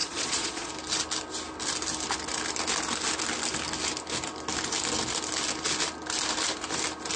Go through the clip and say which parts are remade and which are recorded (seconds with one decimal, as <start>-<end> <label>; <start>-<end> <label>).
0.0-0.7 remade; 0.7-7.2 recorded